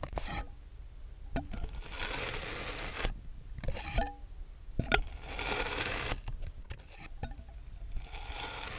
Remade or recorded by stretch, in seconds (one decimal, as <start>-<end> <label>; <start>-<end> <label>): 0.0-8.8 recorded